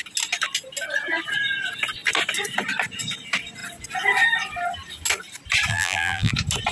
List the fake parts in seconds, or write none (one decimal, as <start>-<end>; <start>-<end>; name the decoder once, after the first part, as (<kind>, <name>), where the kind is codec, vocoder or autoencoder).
5.7-6.3 (vocoder, BigVGAN v2)